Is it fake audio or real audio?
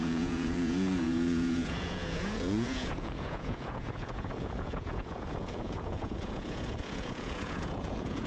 fake